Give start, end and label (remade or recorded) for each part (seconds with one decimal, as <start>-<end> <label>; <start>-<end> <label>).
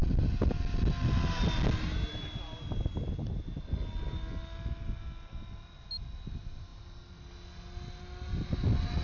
0.0-9.0 recorded